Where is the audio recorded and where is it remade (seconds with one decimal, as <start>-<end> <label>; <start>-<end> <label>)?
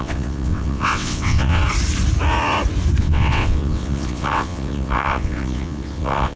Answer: 0.0-1.6 remade; 1.6-3.0 recorded; 3.0-6.4 remade